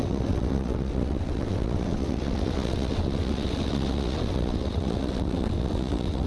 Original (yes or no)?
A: no